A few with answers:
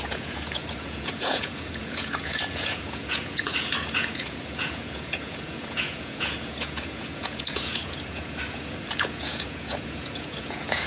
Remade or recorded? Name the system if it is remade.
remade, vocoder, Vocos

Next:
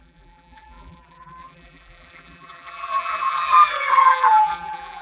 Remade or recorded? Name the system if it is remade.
remade, vocoder, BigVGAN v2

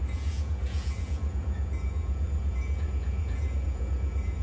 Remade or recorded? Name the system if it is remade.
remade, vocoder, Vocos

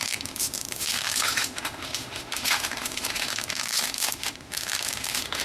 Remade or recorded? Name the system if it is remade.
remade, autoencoder, DAC-VAE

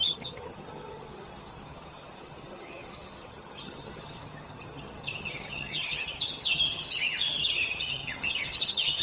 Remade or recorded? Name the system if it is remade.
remade, vocoder, HiFi-GAN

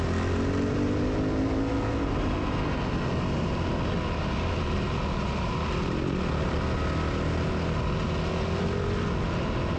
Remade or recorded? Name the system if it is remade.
recorded